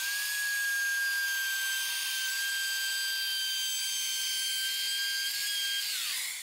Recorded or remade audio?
recorded